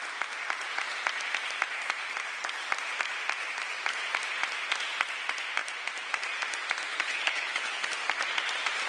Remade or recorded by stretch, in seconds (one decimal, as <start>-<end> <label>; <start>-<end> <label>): 0.0-6.9 recorded; 6.9-7.9 remade; 7.9-8.9 recorded